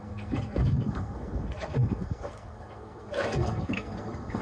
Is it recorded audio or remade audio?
remade